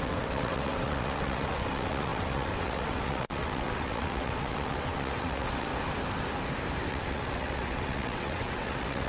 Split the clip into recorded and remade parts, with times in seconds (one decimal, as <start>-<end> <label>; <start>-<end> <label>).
0.0-5.7 remade; 5.7-6.9 recorded; 6.9-9.1 remade